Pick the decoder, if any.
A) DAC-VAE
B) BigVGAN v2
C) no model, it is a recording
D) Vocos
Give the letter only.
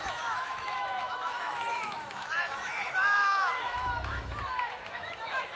A